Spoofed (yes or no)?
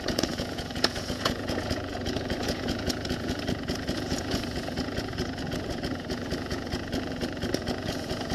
yes